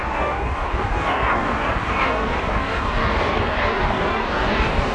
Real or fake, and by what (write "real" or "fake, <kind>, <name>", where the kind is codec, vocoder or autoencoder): fake, codec, DAC